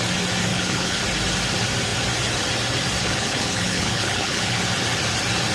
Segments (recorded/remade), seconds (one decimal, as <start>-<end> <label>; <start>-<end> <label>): 0.0-0.5 recorded; 0.5-1.0 remade; 1.0-3.0 recorded; 3.0-4.6 remade; 4.6-5.5 recorded